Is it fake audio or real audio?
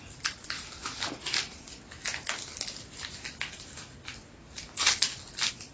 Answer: real